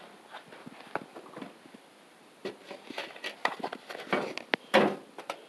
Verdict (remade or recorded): recorded